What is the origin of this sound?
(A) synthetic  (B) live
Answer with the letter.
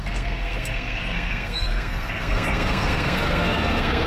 A